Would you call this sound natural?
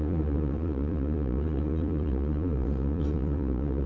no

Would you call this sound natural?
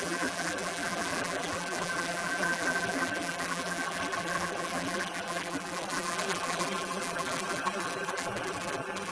no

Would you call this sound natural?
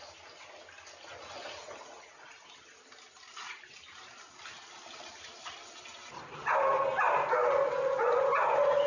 yes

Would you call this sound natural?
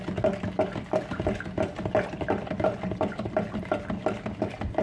yes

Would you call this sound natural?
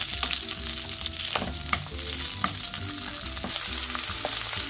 yes